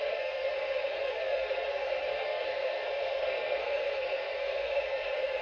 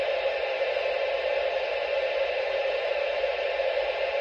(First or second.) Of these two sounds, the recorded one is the second